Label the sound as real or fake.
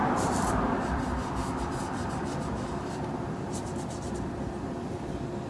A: fake